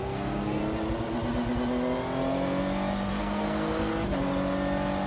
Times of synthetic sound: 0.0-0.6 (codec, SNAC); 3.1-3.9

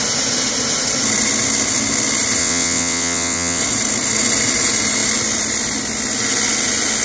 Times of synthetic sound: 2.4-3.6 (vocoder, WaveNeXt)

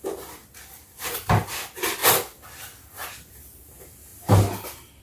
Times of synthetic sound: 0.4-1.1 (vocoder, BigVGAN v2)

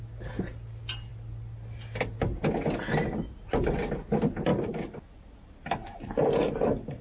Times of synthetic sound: none

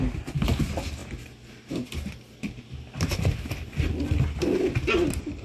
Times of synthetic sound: none

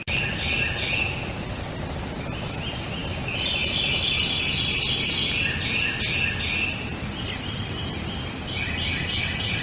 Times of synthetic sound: none